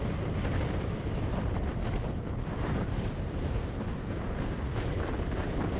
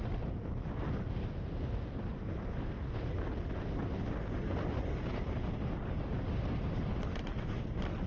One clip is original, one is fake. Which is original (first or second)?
second